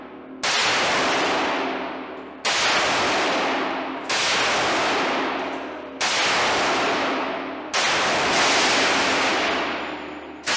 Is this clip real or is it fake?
real